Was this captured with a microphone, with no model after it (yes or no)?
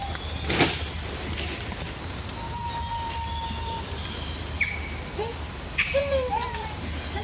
yes